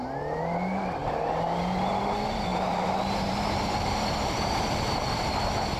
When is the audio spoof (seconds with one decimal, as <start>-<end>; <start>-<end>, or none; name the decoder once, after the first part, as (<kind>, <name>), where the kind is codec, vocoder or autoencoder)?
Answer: 2.5-5.2 (vocoder, BigVGAN v2)